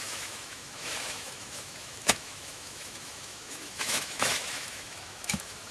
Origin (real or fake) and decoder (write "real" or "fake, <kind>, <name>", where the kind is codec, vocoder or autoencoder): fake, autoencoder, DAC-VAE